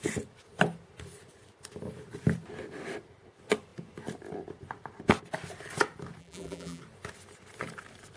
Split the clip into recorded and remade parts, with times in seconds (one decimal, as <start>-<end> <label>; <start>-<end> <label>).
0.0-6.2 recorded; 6.2-6.8 remade; 6.8-8.2 recorded